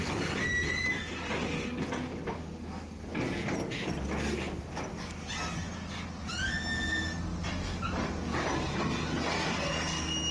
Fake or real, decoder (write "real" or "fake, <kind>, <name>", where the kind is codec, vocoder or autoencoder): real